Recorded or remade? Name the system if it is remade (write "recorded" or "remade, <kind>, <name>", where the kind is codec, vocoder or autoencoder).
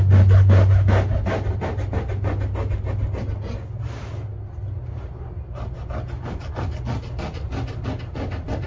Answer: recorded